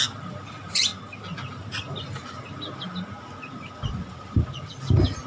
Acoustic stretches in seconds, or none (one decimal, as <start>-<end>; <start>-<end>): 0.9-4.1